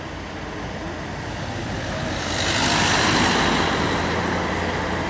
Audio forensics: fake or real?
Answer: real